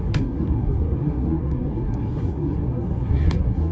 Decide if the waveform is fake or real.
fake